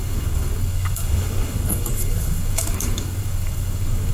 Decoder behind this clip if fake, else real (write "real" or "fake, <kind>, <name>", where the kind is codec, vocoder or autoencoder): fake, codec, DAC